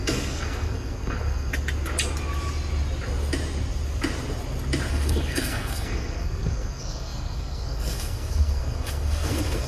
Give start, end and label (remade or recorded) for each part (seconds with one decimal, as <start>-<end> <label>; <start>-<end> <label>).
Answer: 0.0-1.5 remade; 1.5-4.9 recorded; 4.9-9.7 remade